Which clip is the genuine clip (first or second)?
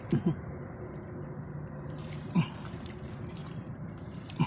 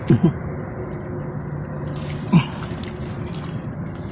second